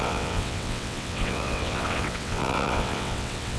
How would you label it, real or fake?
fake